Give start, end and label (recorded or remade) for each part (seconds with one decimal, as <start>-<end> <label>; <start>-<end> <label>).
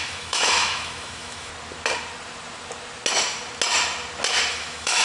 0.0-1.5 remade; 1.5-4.5 recorded; 4.5-5.0 remade